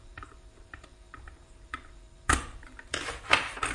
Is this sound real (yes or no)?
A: no